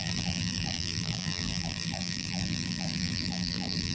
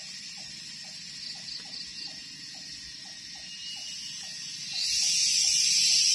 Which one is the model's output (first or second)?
first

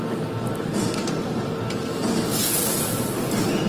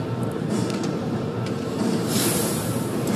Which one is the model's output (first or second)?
second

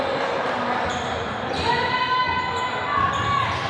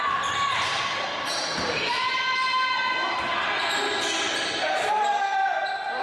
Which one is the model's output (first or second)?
second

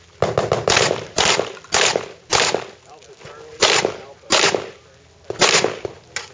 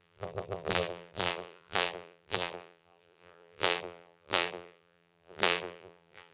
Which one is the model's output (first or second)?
second